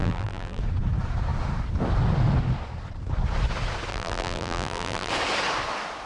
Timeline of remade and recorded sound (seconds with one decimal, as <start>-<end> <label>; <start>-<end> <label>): 0.0-0.6 remade; 0.6-3.9 recorded; 3.9-5.1 remade; 5.1-6.1 recorded